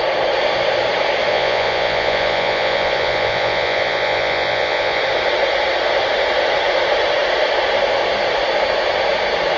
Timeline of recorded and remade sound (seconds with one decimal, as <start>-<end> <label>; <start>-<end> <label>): 0.0-1.3 recorded; 1.3-5.0 remade; 5.0-9.6 recorded